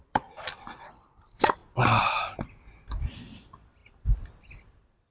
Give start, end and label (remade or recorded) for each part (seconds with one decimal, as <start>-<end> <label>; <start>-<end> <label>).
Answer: 0.0-1.6 remade; 1.6-2.2 recorded; 2.2-3.8 remade; 3.8-5.1 recorded